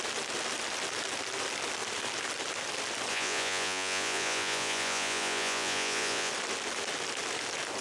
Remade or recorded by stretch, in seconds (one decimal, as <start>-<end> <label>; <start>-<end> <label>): 0.0-3.1 recorded; 3.1-6.3 remade; 6.3-7.8 recorded